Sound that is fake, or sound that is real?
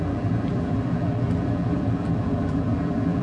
fake